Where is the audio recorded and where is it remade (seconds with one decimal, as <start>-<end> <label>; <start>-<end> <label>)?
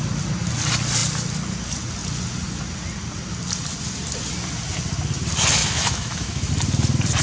0.0-5.6 recorded; 5.6-6.5 remade; 6.5-7.2 recorded